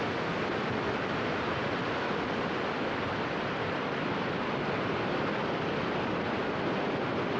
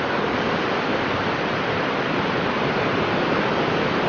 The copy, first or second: second